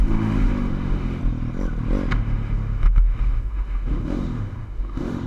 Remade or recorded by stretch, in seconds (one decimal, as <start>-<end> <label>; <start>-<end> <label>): 0.0-1.2 remade; 1.2-2.1 recorded; 2.1-5.3 remade